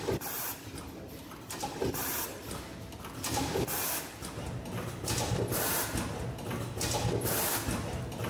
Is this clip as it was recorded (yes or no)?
yes